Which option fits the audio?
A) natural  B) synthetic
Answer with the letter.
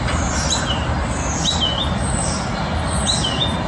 A